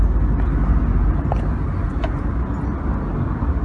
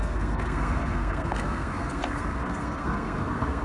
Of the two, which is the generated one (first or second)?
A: second